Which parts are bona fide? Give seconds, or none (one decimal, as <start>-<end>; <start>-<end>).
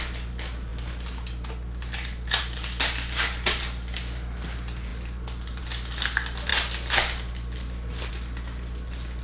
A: 0.0-9.2